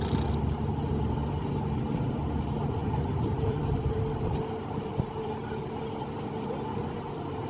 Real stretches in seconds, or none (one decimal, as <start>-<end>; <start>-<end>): 0.0-2.8; 3.9-7.5